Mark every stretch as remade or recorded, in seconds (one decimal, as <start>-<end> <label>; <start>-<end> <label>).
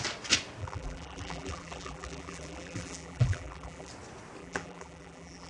0.0-0.6 recorded; 0.6-3.9 remade; 3.9-4.4 recorded; 4.4-5.5 remade